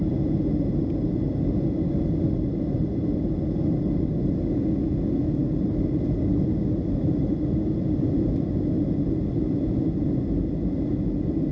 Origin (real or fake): real